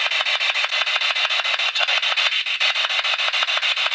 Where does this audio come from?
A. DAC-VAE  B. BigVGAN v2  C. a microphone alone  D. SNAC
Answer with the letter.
B